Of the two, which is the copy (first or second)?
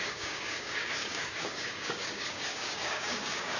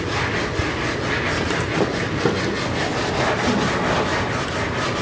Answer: first